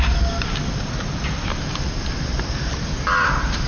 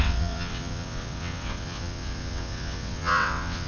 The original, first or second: first